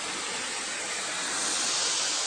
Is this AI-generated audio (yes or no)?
no